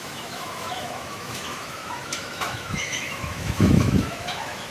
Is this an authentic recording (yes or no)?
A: no